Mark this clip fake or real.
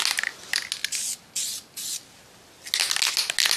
real